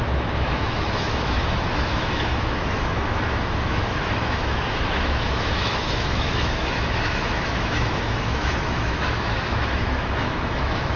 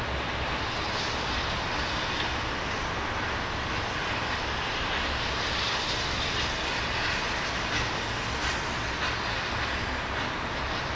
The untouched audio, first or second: second